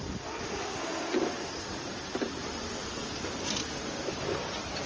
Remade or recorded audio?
recorded